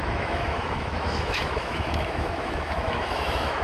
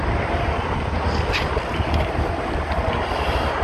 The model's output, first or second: first